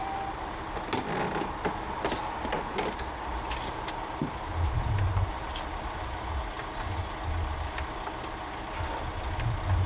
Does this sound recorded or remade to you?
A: recorded